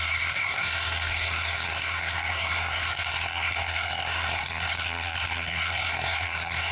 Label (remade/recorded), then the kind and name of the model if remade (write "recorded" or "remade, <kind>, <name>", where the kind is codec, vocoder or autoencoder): remade, codec, SNAC